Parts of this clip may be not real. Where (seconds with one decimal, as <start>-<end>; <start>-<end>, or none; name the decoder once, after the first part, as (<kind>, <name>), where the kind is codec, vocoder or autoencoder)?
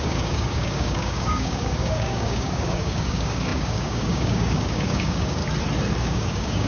0.0-5.4 (codec, DAC); 6.0-6.7